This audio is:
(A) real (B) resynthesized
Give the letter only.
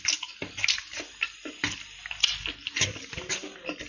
A